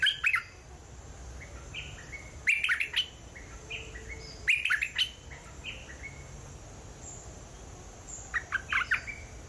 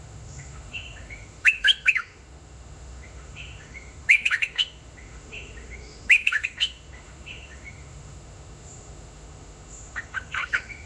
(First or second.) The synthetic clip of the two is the second